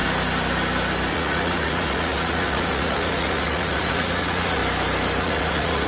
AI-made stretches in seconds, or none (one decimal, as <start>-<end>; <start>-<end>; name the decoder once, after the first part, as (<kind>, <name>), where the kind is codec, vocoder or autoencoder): 1.1-4.6 (vocoder, Vocos); 5.2-5.9